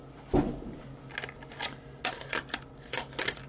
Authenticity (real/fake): real